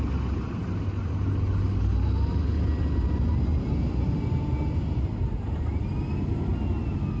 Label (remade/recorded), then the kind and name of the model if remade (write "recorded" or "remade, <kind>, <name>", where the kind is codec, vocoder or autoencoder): recorded